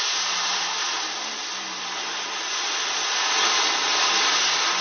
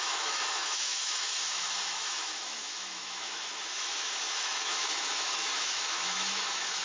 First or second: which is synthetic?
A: second